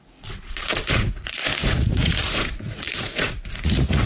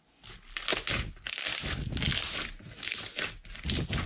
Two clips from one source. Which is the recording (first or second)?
second